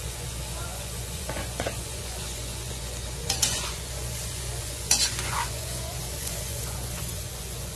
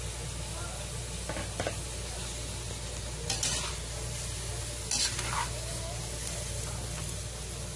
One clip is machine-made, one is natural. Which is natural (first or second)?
second